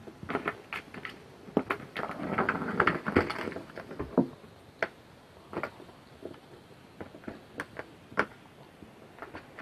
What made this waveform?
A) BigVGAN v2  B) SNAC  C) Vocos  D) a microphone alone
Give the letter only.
D